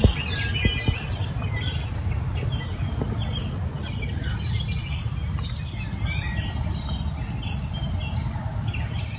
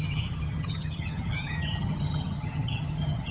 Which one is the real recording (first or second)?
first